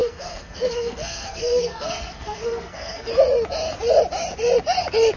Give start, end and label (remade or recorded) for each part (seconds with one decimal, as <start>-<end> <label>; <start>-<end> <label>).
0.0-3.1 remade; 3.1-5.2 recorded